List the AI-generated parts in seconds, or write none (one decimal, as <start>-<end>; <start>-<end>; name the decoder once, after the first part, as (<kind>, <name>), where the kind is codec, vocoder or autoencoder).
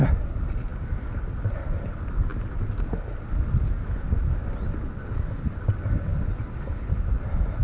none